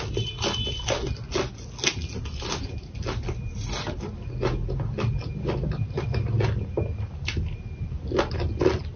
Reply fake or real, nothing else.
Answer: real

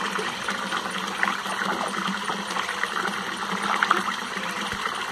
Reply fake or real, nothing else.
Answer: real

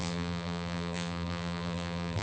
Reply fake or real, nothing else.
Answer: fake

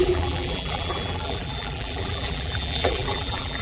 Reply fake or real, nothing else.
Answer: fake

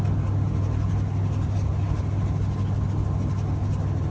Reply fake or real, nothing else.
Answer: real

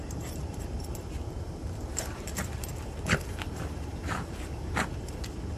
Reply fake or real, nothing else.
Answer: fake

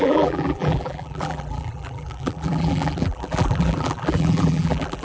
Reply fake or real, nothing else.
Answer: fake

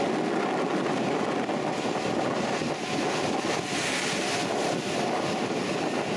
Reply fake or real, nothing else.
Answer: real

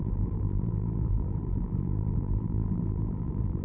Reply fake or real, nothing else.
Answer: fake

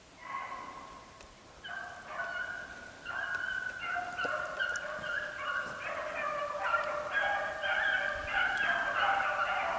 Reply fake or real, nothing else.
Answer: real